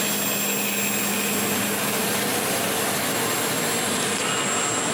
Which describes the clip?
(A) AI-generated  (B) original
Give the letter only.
B